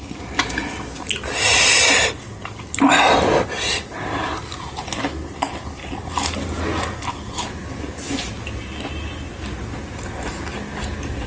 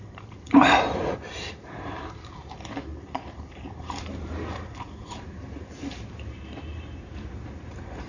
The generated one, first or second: second